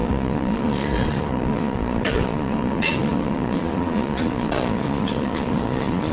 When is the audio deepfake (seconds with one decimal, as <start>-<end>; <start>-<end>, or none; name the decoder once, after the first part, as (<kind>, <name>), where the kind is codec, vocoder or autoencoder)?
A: 0.0-6.1 (vocoder, Vocos)

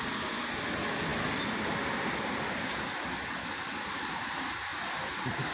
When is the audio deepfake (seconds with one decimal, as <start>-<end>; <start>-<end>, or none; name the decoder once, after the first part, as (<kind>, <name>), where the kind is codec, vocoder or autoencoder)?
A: none

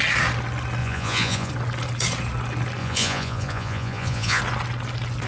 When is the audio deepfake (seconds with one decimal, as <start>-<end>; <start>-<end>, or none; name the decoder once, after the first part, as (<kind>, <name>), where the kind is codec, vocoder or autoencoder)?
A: 0.8-1.5 (vocoder, Vocos); 2.8-4.4

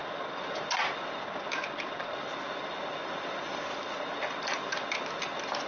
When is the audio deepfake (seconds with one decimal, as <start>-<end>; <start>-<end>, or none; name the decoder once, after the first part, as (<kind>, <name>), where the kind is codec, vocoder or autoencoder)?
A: none

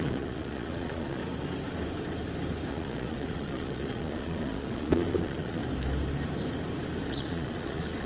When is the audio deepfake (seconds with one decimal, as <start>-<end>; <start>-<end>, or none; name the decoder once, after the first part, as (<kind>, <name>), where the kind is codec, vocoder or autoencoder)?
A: 0.0-1.2 (vocoder, Vocos); 2.7-5.6; 7.1-8.1

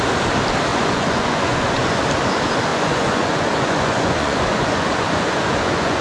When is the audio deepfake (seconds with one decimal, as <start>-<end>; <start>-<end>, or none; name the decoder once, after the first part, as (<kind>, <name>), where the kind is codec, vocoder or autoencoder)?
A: 0.7-2.0 (vocoder, Vocos); 2.7-6.0